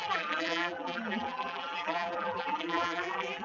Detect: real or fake fake